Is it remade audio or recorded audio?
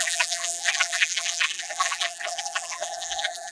remade